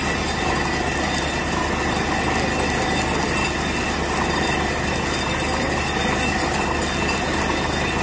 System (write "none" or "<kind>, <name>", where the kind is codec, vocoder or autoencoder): none